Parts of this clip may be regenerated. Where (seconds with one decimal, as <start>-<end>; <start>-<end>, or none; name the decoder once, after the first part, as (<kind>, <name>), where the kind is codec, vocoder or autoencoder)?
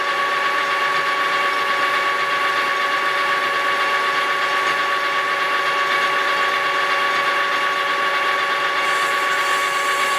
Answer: none